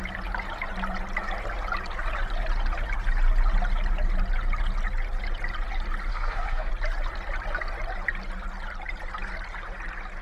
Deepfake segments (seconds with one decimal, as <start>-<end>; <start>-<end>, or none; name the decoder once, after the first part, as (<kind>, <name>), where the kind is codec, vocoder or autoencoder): 6.1-6.7 (codec, SNAC)